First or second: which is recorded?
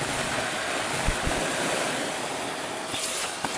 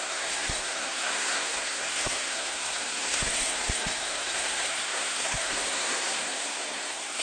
first